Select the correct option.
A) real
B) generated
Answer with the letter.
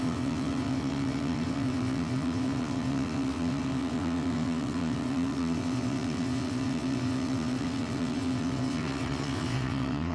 B